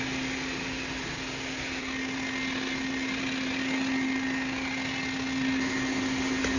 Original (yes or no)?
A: yes